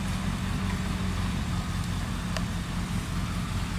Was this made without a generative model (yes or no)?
yes